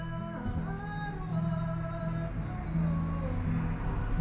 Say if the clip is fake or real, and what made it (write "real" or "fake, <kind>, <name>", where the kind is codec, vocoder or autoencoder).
real